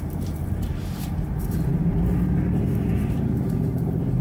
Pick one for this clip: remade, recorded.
remade